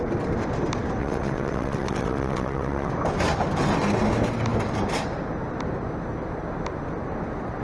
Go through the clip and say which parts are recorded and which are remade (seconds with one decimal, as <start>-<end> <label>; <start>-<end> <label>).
0.0-1.0 recorded; 1.0-2.9 remade; 2.9-7.6 recorded